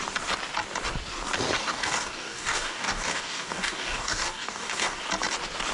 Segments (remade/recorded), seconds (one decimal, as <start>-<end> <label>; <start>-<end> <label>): 0.0-1.6 recorded; 1.6-5.0 remade; 5.0-5.7 recorded